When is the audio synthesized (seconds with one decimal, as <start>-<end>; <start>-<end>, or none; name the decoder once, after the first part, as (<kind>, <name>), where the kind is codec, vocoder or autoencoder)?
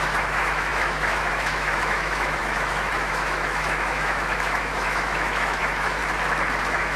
0.0-6.0 (autoencoder, DAC-VAE); 6.6-7.0